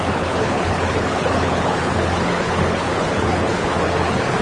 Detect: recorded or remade remade